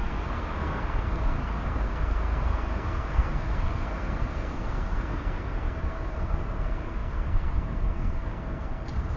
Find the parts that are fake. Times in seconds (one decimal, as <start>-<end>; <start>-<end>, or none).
0.0-9.2